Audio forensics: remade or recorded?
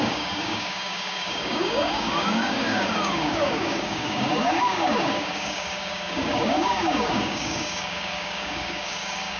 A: remade